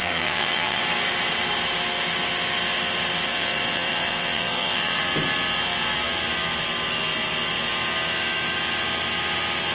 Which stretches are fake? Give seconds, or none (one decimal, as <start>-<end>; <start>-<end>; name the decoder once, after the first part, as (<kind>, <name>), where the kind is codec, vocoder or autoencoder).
0.0-0.8 (vocoder, WaveNeXt); 3.3-5.0